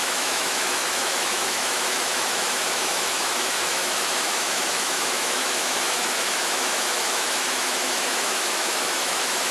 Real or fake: fake